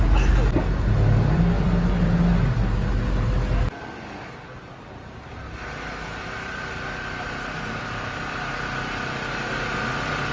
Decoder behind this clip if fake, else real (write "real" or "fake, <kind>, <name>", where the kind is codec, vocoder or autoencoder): real